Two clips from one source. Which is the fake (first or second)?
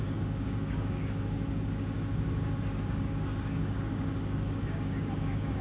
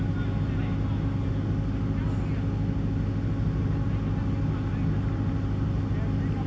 first